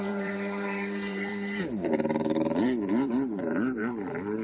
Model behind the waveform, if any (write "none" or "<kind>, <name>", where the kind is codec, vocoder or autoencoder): vocoder, BigVGAN v2